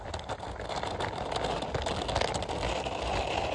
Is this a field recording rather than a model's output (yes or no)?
yes